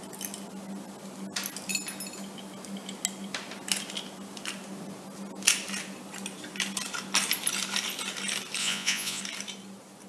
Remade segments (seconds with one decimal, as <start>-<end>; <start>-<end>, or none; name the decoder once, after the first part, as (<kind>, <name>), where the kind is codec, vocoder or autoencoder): 8.6-9.2 (vocoder, Vocos)